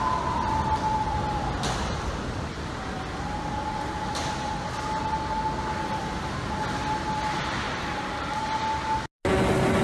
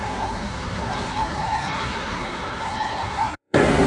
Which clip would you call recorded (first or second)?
first